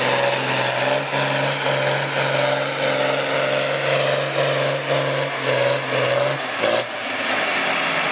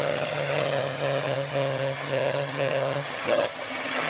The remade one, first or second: second